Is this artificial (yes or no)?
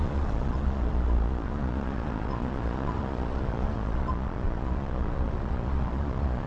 yes